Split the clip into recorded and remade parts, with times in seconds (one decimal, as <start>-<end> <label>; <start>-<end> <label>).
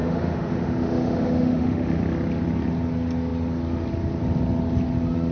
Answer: 0.0-2.0 remade; 2.0-5.3 recorded